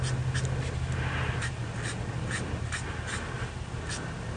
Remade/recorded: recorded